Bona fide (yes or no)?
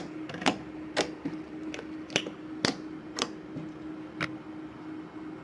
yes